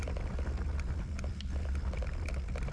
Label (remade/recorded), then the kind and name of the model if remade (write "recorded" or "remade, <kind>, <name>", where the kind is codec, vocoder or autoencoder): remade, vocoder, BigVGAN v2